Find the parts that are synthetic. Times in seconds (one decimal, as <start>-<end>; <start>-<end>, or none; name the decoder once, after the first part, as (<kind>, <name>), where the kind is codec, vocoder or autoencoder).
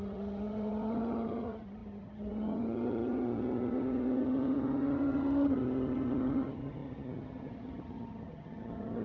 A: 0.0-9.0 (vocoder, HiFi-GAN)